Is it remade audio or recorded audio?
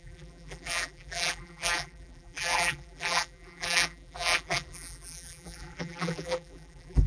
remade